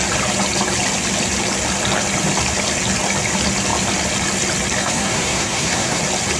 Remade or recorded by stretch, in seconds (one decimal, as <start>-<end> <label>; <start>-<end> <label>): 0.0-4.8 recorded; 4.8-6.0 remade; 6.0-6.4 recorded

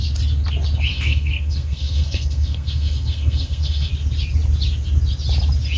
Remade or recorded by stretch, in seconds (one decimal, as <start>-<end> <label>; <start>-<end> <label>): 0.0-0.9 recorded; 0.9-3.9 remade; 3.9-5.8 recorded

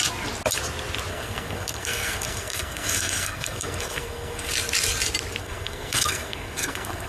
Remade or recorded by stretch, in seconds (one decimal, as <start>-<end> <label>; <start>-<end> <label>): 0.0-1.1 recorded; 1.1-4.5 remade; 4.5-5.4 recorded; 5.4-7.1 remade